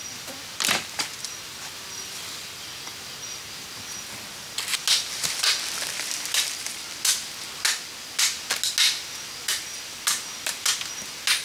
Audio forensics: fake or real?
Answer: real